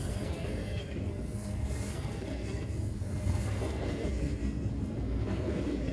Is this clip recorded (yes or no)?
no